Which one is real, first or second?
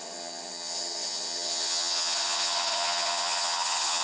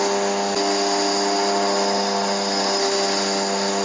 second